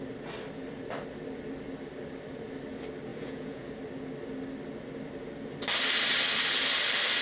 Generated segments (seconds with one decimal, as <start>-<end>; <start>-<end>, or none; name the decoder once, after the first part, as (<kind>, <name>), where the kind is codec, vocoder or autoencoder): 3.1-3.7 (vocoder, Vocos)